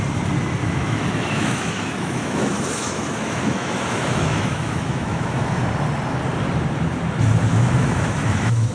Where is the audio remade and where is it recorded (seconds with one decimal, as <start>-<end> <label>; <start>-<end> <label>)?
0.0-0.6 recorded; 0.6-5.6 remade; 5.6-7.5 recorded; 7.5-8.7 remade